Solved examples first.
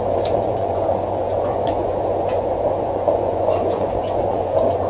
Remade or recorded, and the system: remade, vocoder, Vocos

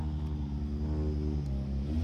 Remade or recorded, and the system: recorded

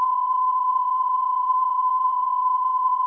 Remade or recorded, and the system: remade, vocoder, Vocos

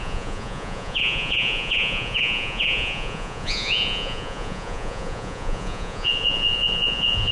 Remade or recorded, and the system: remade, vocoder, Vocos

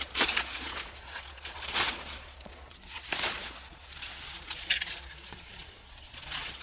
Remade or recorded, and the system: remade, vocoder, Vocos